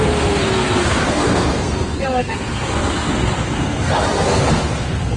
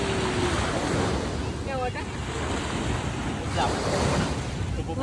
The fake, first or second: first